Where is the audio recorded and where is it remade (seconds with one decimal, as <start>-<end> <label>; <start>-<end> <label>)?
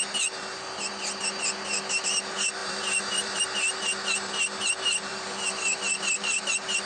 0.0-2.6 recorded; 2.6-3.4 remade; 3.4-5.1 recorded; 5.1-6.5 remade; 6.5-6.9 recorded